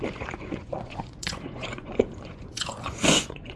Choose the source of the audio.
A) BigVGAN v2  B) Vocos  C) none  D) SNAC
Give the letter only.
B